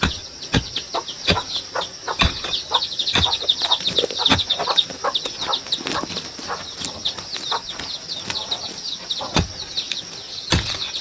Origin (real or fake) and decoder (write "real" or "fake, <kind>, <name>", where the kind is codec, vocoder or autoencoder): real